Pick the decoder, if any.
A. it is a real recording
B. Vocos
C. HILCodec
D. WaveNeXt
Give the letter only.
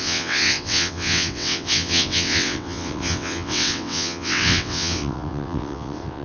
D